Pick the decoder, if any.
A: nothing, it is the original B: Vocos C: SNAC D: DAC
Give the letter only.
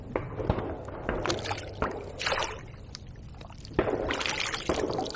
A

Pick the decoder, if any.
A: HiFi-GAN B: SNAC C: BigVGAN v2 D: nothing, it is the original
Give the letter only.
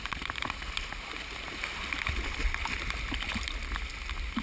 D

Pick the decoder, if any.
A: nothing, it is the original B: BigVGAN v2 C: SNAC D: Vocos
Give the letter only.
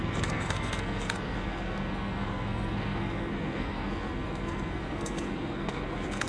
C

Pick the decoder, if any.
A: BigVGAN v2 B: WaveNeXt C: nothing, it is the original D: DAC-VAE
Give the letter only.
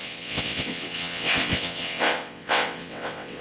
B